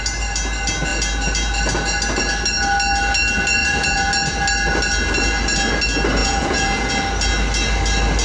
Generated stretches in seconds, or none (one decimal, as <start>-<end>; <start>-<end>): 3.6-4.1; 6.2-6.9

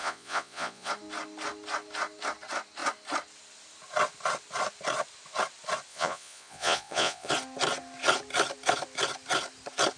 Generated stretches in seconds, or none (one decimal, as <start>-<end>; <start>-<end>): 0.0-0.9; 5.9-7.3